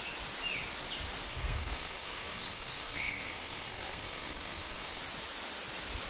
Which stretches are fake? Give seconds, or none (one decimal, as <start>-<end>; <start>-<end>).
1.3-5.0